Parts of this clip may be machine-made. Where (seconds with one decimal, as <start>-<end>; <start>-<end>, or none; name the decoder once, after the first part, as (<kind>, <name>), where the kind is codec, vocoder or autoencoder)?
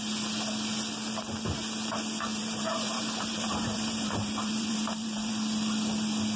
2.3-5.3 (vocoder, BigVGAN v2)